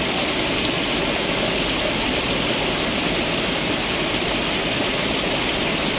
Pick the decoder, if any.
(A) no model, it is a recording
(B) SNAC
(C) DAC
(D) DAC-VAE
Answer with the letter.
A